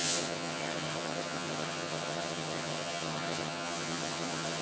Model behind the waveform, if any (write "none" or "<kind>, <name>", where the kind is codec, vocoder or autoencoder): vocoder, HiFi-GAN